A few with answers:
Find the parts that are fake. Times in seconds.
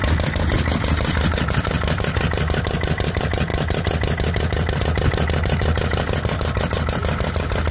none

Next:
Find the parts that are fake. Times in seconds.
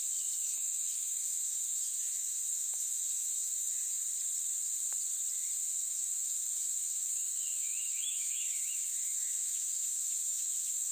0.4-3.7 (autoencoder, DAC-VAE); 5.7-10.9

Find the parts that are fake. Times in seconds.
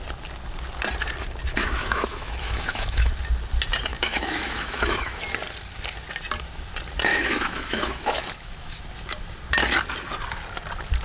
1.5-3.1 (autoencoder, DAC-VAE); 3.9-5.2; 7.1-8.8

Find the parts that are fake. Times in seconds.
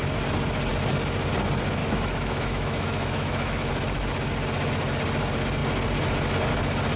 1.8-3.7 (autoencoder, DAC-VAE)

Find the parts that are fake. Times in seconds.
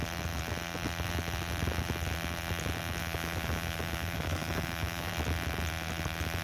3.0-5.1 (autoencoder, DAC-VAE)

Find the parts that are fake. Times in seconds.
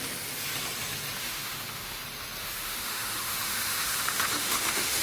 1.2-2.0 (autoencoder, DAC-VAE); 2.4-5.0